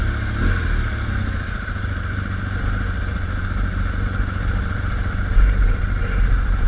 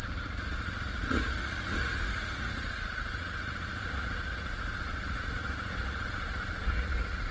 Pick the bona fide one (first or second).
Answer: first